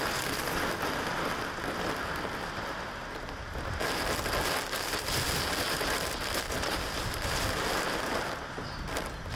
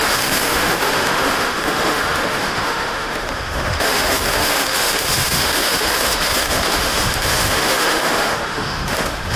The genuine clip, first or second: first